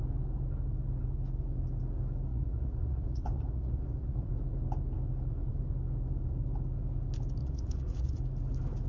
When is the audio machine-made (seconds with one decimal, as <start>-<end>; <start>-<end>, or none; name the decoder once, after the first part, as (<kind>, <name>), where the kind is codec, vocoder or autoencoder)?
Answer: 2.3-4.3 (vocoder, Vocos); 7.4-8.2